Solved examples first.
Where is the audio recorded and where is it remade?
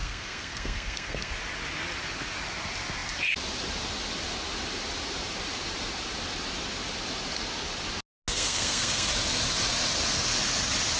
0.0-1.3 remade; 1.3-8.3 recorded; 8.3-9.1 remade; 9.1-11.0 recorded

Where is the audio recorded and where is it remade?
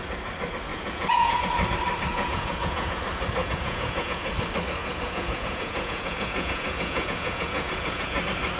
0.0-0.7 recorded; 0.7-1.4 remade; 1.4-2.1 recorded; 2.1-3.0 remade; 3.0-3.4 recorded; 3.4-4.3 remade; 4.3-4.8 recorded; 4.8-8.2 remade; 8.2-8.6 recorded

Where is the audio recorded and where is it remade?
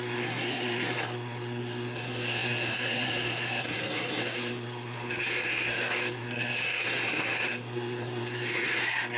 0.0-9.2 remade